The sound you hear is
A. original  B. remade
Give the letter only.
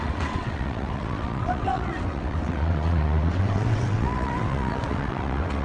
B